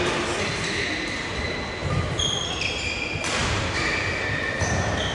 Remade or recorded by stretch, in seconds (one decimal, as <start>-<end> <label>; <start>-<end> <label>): 0.0-5.1 recorded